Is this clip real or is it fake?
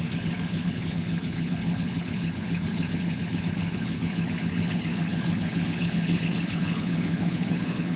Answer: fake